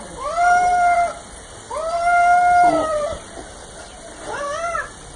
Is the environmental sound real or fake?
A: real